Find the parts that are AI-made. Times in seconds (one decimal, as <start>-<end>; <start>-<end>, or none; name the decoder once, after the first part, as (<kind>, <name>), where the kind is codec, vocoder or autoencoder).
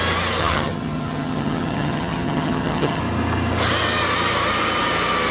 0.4-3.0 (vocoder, HiFi-GAN)